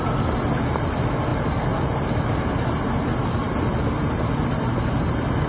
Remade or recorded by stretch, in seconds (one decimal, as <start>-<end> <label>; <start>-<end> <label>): 0.0-5.5 recorded